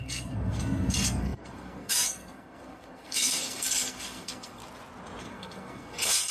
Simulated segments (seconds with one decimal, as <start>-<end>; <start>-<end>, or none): 0.0-4.6; 5.2-6.3